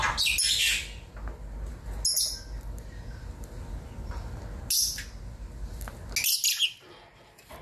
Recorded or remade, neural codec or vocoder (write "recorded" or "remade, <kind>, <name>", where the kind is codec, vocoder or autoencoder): recorded